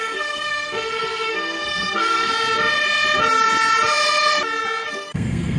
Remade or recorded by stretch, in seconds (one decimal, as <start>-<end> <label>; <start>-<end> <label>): 0.0-2.3 remade; 2.3-4.9 recorded; 4.9-5.6 remade